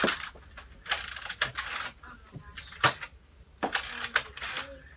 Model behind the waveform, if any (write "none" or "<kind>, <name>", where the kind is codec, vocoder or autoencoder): none